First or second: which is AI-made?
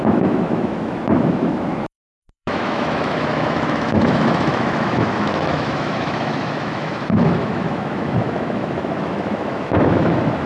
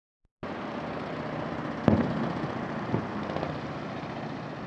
first